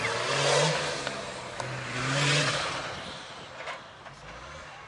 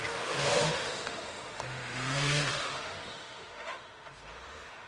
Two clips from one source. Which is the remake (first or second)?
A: second